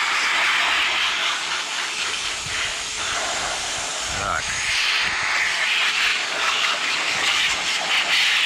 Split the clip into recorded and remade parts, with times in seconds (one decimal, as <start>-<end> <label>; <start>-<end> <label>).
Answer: 0.0-1.2 recorded; 1.2-2.3 remade; 2.3-3.9 recorded; 3.9-4.4 remade; 4.4-6.1 recorded; 6.1-7.4 remade; 7.4-8.5 recorded